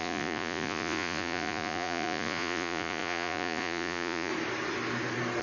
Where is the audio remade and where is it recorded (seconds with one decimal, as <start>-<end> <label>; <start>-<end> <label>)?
0.0-4.3 remade; 4.3-5.4 recorded